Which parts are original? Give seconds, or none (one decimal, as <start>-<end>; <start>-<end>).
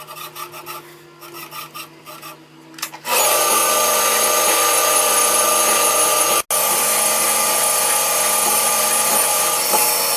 0.0-10.2